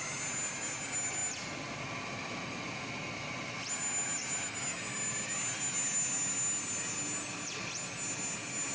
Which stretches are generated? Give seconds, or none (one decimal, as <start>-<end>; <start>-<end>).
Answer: none